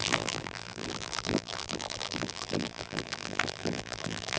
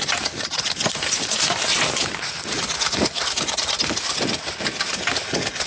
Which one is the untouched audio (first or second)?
second